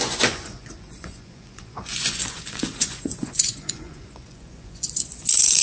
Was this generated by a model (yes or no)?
yes